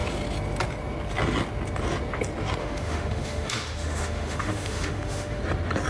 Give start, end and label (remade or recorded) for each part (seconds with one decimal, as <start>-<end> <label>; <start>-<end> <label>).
0.0-2.6 recorded; 2.6-5.4 remade; 5.4-5.9 recorded